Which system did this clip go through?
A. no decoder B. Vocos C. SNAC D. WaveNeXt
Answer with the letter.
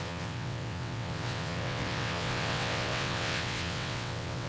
D